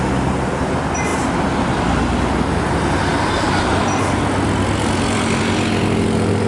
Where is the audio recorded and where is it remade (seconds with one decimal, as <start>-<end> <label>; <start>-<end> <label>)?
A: 0.0-1.1 recorded; 1.1-2.6 remade; 2.6-3.1 recorded; 3.1-5.4 remade; 5.4-6.5 recorded